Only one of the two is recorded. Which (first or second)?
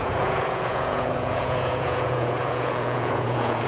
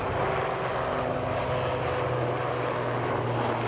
second